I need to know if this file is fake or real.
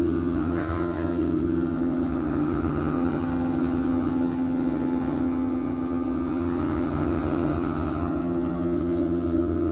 fake